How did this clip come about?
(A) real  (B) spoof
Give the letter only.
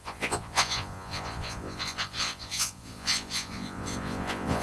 B